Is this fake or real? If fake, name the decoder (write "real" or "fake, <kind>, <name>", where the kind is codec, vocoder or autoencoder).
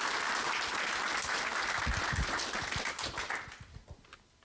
real